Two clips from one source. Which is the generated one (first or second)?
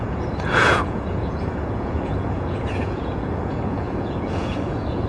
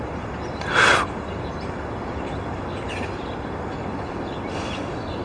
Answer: first